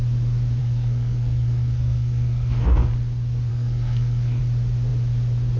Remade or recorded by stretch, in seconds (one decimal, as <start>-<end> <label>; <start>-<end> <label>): 0.0-0.6 recorded; 0.6-2.9 remade; 2.9-3.5 recorded; 3.5-4.4 remade; 4.4-5.6 recorded